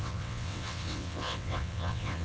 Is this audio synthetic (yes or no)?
yes